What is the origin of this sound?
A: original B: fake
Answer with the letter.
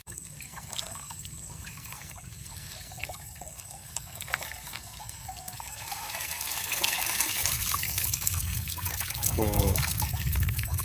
B